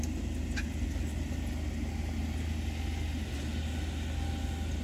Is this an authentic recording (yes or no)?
yes